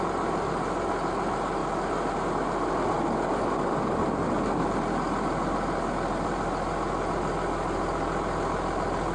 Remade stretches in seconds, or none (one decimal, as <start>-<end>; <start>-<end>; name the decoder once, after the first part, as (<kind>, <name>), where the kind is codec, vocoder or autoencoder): none